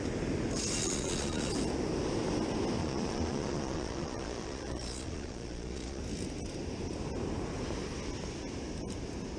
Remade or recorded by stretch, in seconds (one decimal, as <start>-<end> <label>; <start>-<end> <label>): 0.0-0.8 recorded; 0.8-1.5 remade; 1.5-2.8 recorded; 2.8-6.0 remade; 6.0-9.4 recorded